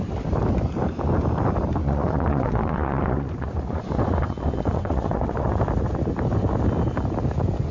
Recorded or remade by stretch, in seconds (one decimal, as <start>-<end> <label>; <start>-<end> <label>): 0.0-1.8 recorded; 1.8-5.6 remade; 5.6-7.7 recorded